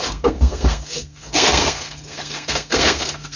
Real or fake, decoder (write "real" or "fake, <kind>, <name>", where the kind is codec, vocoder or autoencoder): fake, codec, SNAC